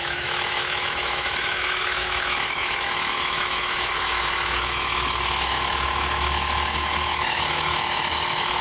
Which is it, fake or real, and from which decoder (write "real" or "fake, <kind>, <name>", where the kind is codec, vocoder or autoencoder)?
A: fake, autoencoder, DAC-VAE